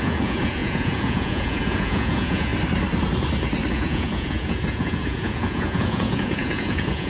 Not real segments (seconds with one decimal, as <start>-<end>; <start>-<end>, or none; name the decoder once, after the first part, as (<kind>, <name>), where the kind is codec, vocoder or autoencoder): 0.0-2.5 (vocoder, Vocos); 3.7-7.1